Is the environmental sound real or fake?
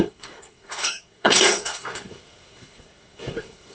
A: fake